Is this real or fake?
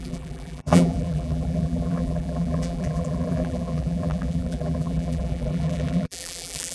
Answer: fake